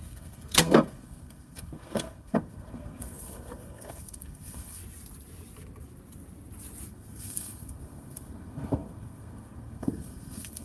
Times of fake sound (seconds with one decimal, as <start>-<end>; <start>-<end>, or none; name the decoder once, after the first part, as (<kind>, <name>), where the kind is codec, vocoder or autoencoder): 0.0-4.8 (codec, SNAC); 6.9-10.6